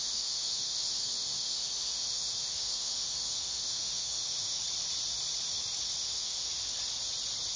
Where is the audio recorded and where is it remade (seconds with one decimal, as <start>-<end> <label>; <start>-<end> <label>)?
0.0-4.6 remade; 4.6-6.0 recorded; 6.0-6.5 remade; 6.5-7.6 recorded